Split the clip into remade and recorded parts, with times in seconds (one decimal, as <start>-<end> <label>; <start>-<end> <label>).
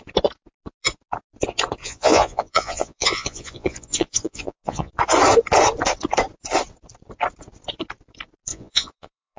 0.0-1.8 recorded; 1.8-4.9 remade; 4.9-8.5 recorded; 8.5-9.4 remade